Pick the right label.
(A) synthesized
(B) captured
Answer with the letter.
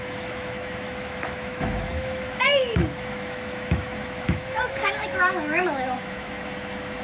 A